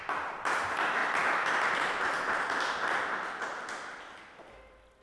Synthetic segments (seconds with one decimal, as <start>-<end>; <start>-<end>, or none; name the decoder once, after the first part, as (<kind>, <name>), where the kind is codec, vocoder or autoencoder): none